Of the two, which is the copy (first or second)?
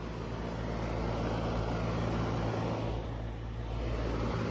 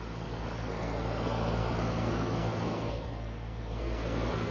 second